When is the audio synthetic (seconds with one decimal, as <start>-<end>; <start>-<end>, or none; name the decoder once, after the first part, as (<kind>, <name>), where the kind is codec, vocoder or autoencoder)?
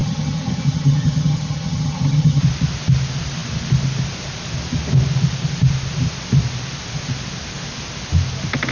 0.0-2.4 (vocoder, HiFi-GAN)